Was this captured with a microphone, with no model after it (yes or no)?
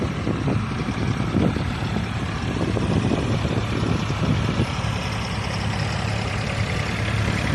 yes